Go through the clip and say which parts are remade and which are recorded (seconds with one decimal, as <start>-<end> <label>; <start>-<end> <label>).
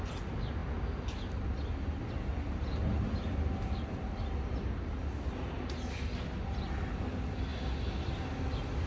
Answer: 0.0-8.9 recorded